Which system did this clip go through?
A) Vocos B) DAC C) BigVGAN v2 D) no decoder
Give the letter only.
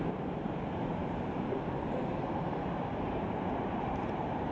C